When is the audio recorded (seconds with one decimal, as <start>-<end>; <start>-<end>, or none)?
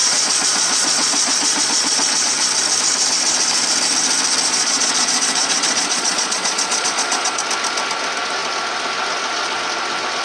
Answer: 2.3-4.5; 7.4-10.2